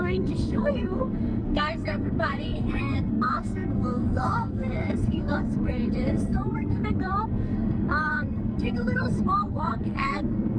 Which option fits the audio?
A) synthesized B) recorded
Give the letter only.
A